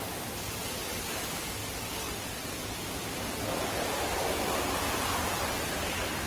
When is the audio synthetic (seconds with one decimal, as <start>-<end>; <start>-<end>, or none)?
0.0-1.6; 2.9-6.3